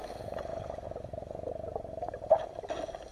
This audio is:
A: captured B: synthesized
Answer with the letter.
A